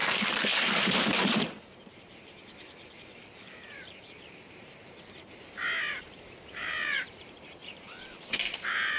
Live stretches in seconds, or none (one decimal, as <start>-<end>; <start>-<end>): 4.8-5.9